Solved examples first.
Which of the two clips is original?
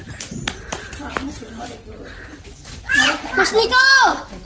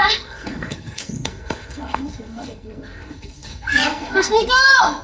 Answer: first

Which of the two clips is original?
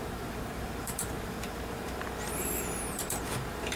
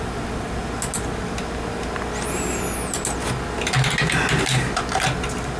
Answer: second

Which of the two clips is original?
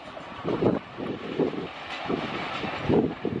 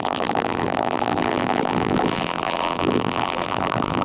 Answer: first